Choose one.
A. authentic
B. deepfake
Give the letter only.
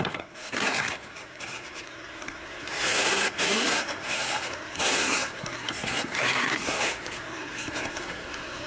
B